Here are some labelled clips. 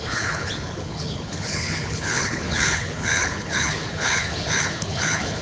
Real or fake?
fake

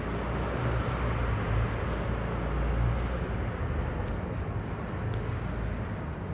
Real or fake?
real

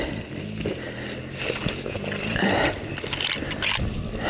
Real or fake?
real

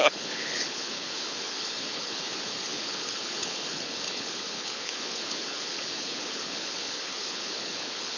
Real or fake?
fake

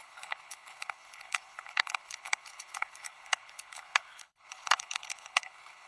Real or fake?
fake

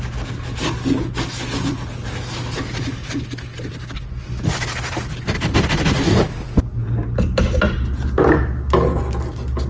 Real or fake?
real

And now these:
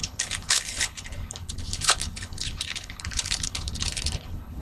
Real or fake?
fake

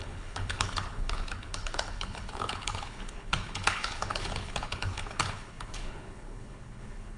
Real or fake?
fake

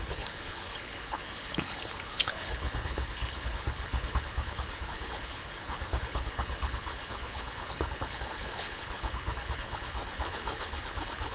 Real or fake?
fake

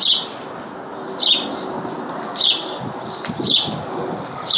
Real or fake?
real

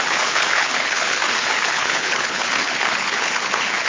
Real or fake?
fake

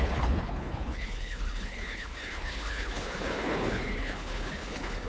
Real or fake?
fake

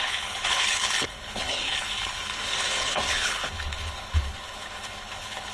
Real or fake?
fake